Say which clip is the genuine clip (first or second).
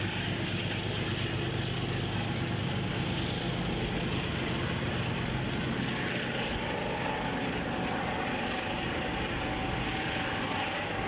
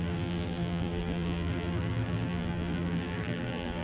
first